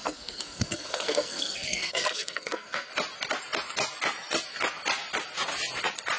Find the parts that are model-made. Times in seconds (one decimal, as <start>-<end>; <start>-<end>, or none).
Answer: 0.0-2.9